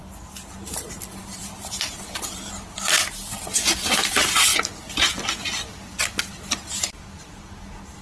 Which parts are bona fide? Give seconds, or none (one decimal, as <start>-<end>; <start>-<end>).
0.0-8.0